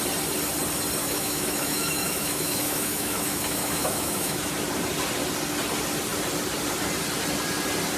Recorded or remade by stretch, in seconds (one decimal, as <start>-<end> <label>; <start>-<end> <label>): 0.0-1.0 recorded; 1.0-4.5 remade; 4.5-8.0 recorded